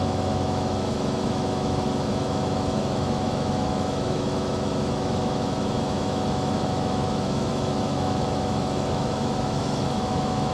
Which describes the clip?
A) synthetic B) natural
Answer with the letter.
A